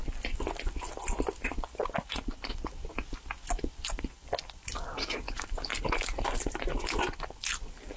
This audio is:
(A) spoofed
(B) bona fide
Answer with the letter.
B